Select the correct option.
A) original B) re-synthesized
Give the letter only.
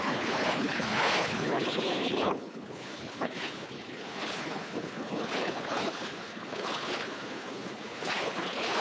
B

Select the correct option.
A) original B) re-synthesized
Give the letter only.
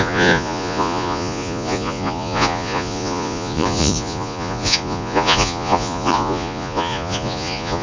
B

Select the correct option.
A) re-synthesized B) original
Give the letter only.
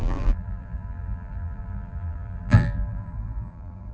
A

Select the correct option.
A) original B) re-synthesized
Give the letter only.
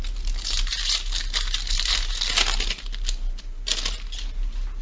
A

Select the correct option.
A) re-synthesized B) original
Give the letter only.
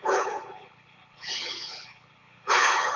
A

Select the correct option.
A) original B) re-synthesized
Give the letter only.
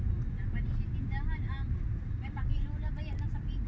A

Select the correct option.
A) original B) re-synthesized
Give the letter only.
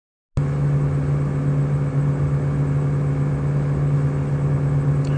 A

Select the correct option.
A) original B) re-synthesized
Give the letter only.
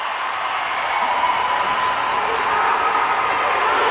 A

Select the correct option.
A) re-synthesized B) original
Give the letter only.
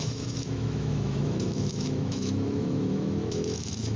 A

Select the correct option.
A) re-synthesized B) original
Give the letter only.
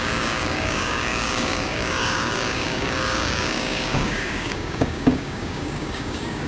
A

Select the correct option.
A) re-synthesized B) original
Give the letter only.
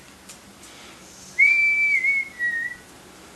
B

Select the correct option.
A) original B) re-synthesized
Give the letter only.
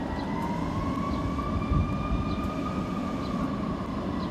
A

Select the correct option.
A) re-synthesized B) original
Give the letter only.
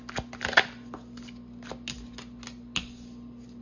B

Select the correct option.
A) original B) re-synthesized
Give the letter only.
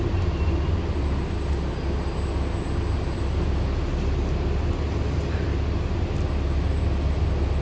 A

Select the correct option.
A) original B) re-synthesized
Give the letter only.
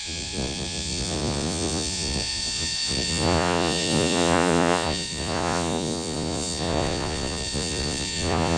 B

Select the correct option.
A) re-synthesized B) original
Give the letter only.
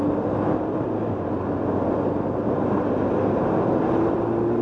B